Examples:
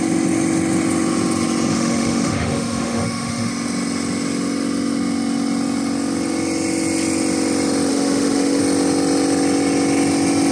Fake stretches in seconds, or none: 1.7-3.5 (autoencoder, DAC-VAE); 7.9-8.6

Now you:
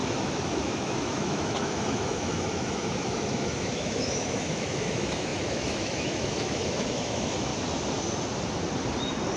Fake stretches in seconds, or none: 0.0-7.5 (autoencoder, DAC-VAE)

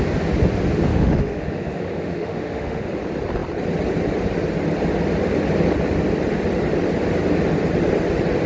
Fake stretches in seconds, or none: 0.9-3.0 (autoencoder, DAC-VAE)

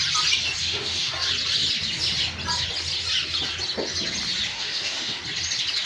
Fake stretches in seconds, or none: 0.6-1.1 (autoencoder, DAC-VAE); 4.5-5.2

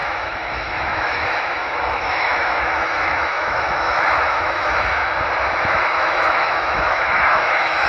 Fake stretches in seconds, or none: 0.0-5.0 (autoencoder, DAC-VAE); 5.5-7.9

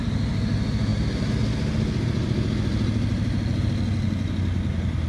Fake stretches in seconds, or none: none

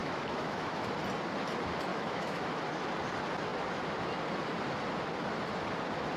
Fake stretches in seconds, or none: 0.0-1.0 (autoencoder, DAC-VAE); 1.9-2.5

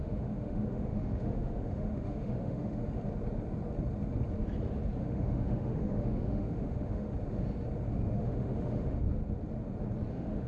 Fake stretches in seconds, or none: 0.0-2.8 (autoencoder, DAC-VAE); 5.0-7.1; 7.9-9.2; 10.1-10.5